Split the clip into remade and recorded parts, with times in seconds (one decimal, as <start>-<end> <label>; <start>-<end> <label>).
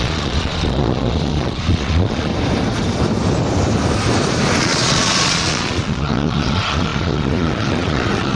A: 0.0-2.3 remade; 2.3-4.6 recorded; 4.6-8.4 remade